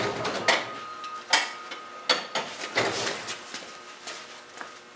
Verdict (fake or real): real